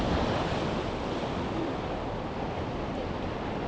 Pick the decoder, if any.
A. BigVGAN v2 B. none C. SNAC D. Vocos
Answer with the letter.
B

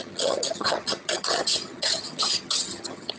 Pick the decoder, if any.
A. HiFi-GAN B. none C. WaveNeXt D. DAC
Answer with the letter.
A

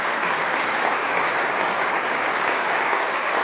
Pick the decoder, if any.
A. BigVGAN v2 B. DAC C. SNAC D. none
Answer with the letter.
B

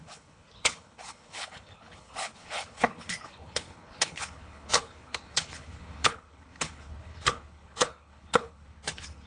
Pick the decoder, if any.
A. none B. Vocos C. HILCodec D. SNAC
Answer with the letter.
C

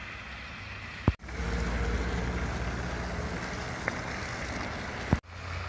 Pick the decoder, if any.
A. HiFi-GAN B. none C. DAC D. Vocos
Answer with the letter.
B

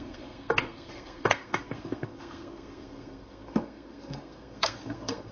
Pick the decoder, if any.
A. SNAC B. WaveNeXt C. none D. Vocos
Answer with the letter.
A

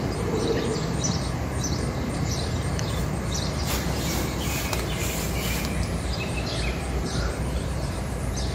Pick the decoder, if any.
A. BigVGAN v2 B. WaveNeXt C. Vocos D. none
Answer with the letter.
A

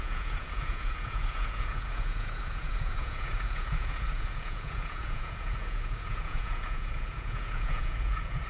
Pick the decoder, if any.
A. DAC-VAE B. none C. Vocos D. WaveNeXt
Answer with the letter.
C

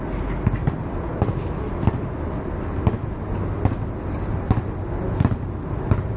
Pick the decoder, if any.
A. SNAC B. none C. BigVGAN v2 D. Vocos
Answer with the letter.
B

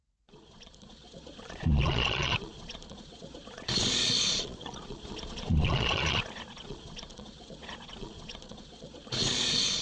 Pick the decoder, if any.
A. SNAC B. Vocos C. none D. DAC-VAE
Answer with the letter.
B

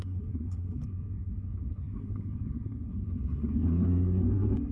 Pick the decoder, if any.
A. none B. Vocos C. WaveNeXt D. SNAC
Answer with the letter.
D